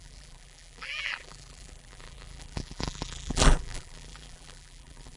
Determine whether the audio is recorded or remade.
remade